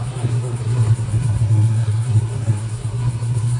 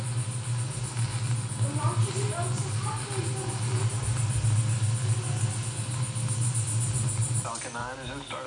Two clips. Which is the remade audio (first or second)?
first